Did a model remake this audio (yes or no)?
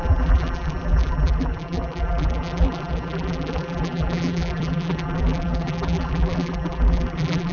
yes